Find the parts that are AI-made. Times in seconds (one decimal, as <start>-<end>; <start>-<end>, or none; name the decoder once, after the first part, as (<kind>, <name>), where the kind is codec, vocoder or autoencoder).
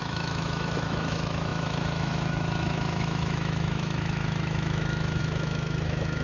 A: 0.0-6.2 (autoencoder, DAC-VAE)